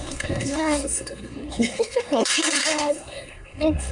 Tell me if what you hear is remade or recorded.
remade